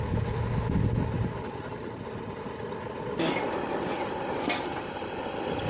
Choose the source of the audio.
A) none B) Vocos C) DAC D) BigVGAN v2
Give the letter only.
A